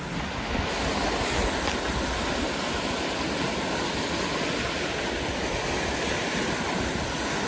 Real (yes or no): yes